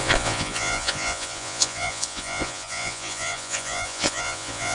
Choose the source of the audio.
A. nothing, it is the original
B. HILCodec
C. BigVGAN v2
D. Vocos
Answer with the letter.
D